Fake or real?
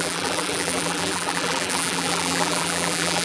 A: fake